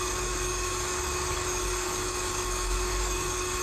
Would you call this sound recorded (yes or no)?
no